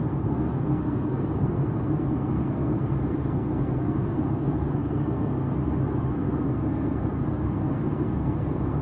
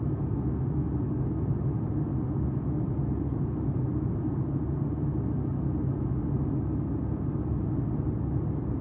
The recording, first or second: second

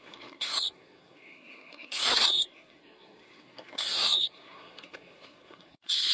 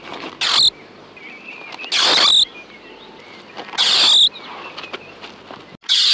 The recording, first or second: second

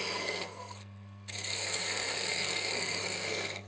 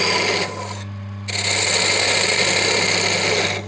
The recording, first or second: second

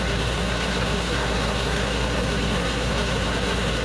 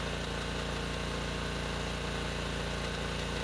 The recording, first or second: second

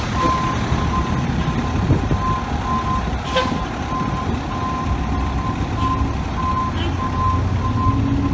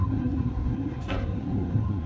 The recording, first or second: first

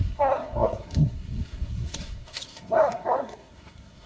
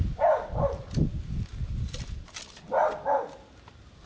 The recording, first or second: second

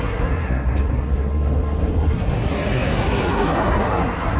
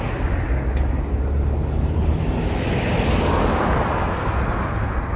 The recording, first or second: second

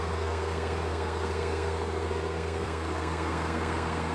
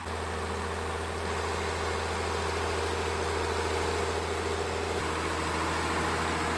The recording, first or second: second